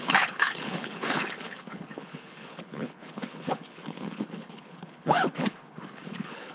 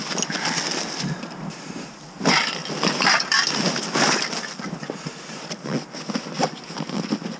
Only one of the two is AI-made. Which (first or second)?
first